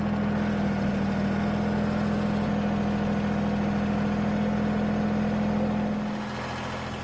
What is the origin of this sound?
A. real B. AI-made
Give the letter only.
A